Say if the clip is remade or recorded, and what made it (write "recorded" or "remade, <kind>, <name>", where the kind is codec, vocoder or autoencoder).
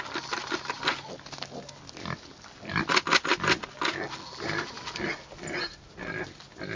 recorded